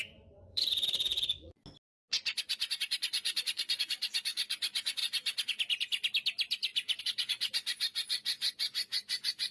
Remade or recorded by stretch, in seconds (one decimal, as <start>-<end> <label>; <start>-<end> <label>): 0.0-1.6 remade; 1.6-2.2 recorded; 2.2-5.0 remade; 5.0-7.0 recorded; 7.0-9.5 remade